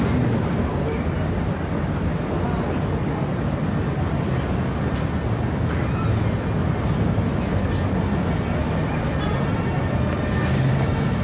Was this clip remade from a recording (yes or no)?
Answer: no